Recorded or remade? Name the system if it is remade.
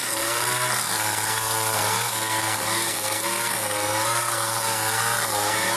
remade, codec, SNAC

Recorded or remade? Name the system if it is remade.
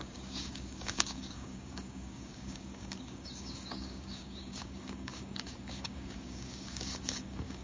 remade, codec, DAC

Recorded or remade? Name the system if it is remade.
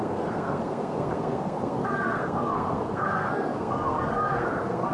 remade, codec, SNAC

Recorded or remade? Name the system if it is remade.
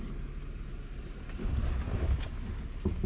recorded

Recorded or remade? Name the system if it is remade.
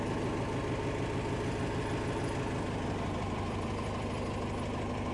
recorded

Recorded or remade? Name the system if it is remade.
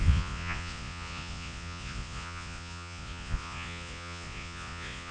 remade, vocoder, Vocos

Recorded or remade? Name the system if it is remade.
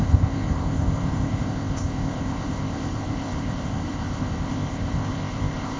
remade, codec, ZipCodec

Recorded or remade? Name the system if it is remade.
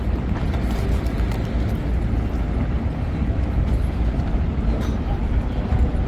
recorded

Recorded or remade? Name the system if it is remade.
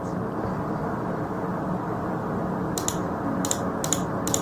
recorded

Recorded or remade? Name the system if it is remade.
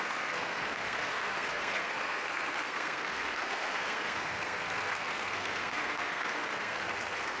remade, codec, SNAC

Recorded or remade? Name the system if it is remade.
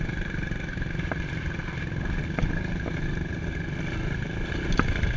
recorded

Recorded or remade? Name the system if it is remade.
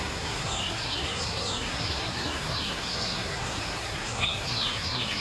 remade, codec, SNAC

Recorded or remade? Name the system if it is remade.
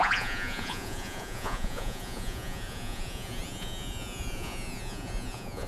remade, vocoder, Vocos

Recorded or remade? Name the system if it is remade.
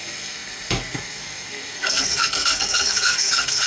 remade, codec, SNAC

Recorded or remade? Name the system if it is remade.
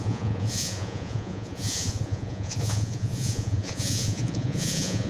remade, vocoder, Vocos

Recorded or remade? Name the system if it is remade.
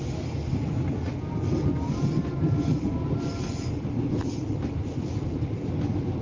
recorded